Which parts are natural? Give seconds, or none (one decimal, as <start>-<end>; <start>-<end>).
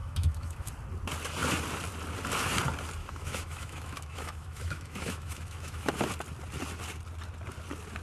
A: 0.7-3.0; 5.9-8.0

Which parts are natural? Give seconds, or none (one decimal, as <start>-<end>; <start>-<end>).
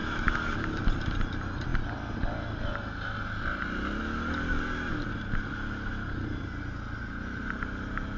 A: 0.8-8.2